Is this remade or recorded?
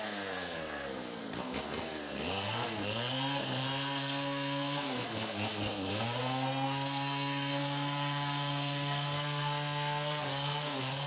remade